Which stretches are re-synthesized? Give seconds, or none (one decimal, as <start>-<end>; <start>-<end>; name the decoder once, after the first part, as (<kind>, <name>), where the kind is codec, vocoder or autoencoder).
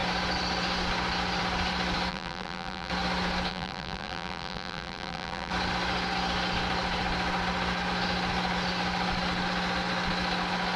2.1-2.9 (vocoder, BigVGAN v2); 3.5-5.5